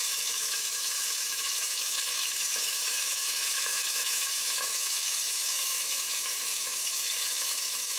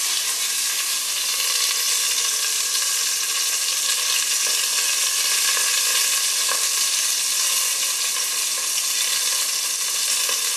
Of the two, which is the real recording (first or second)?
second